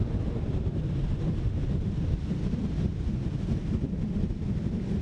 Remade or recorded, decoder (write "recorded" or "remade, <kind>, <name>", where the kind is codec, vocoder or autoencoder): recorded